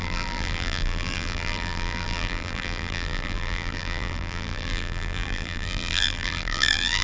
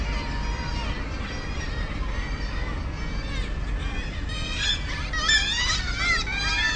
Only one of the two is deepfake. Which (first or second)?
first